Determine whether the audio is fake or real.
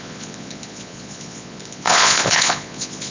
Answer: fake